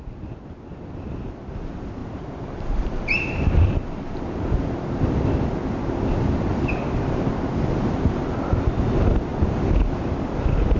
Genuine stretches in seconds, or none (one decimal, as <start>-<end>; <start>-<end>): 0.0-2.0; 5.0-6.5; 7.3-10.8